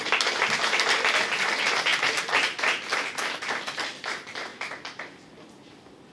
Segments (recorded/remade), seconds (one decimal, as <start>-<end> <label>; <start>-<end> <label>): 0.0-6.1 recorded